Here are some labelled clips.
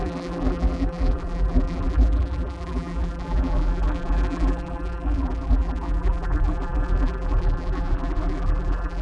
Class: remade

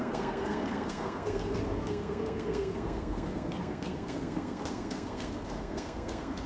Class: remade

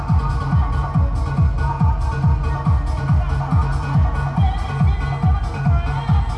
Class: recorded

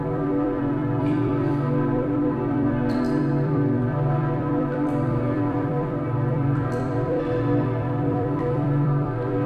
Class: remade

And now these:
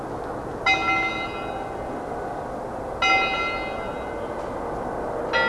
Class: recorded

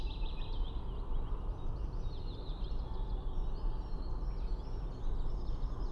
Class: recorded